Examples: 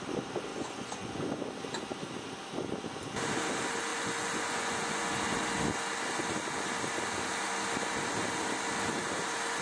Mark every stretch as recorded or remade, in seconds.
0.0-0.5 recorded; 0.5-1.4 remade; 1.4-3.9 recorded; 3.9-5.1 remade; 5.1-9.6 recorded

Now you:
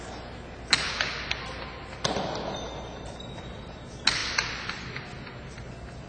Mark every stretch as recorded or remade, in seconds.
0.0-6.1 recorded

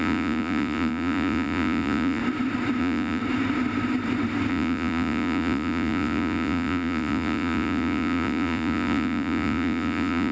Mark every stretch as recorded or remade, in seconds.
0.0-2.2 remade; 2.2-2.8 recorded; 2.8-3.2 remade; 3.2-4.5 recorded; 4.5-10.3 remade